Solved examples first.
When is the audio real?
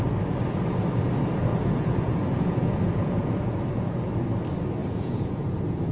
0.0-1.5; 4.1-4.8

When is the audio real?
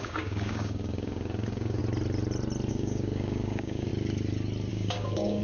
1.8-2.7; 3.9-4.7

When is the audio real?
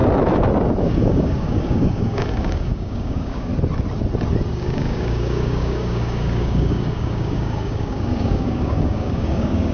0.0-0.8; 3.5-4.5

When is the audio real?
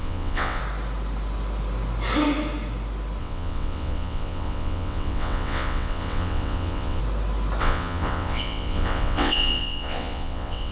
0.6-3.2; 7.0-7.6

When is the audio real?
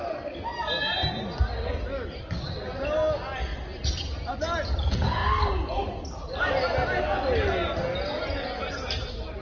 0.0-3.5; 4.1-9.4